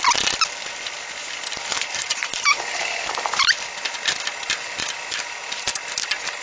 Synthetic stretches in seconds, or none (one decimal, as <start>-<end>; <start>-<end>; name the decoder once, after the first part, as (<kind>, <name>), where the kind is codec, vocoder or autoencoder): none